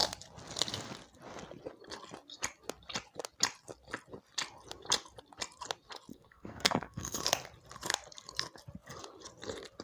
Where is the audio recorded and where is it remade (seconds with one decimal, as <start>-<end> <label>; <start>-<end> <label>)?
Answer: 0.0-6.1 recorded; 6.1-7.2 remade; 7.2-9.8 recorded